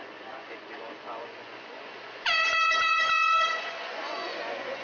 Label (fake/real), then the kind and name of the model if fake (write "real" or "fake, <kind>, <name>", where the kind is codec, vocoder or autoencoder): fake, vocoder, Vocos